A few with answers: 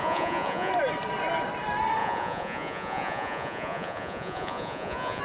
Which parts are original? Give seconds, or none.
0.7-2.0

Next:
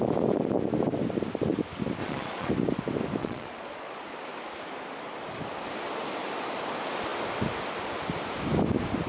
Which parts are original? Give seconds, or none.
0.0-2.0; 2.5-3.2; 4.0-9.1

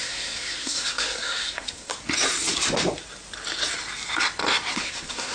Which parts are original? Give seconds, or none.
1.9-4.7